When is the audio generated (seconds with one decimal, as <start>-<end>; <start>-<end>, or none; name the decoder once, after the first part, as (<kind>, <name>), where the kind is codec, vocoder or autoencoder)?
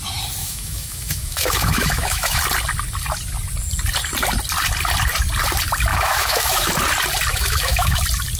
0.4-2.4 (autoencoder, DAC-VAE); 5.9-6.7; 7.3-8.0